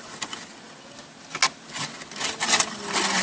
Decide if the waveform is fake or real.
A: real